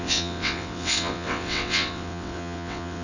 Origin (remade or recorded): remade